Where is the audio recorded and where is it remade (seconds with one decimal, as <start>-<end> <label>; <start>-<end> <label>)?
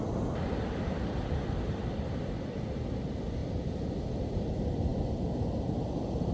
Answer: 0.0-6.3 recorded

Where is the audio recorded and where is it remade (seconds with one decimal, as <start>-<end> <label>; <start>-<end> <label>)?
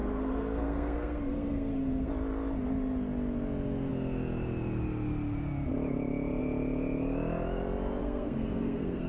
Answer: 0.0-2.1 remade; 2.1-8.0 recorded; 8.0-9.1 remade